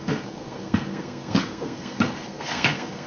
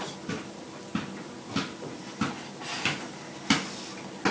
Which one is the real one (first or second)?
second